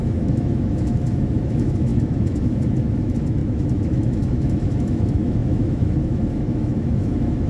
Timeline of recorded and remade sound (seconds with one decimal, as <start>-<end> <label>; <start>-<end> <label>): 0.0-7.5 remade